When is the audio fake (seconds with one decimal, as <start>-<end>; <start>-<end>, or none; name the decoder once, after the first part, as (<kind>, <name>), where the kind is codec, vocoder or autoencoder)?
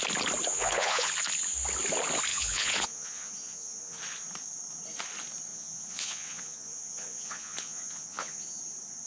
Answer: 0.5-1.1 (vocoder, Vocos); 2.3-4.0; 5.5-8.6